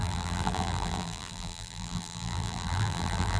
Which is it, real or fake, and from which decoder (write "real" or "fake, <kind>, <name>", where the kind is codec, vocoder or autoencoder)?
fake, vocoder, BigVGAN v2